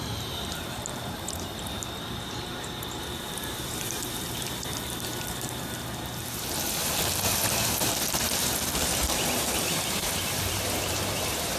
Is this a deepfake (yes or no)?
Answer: yes